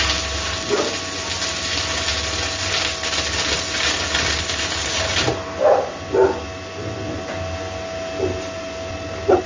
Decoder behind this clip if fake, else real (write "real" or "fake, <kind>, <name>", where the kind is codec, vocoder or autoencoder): real